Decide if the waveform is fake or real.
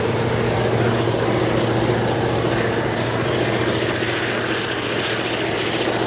real